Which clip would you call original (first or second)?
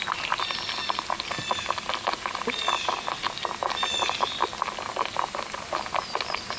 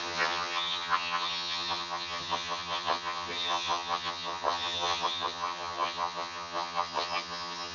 first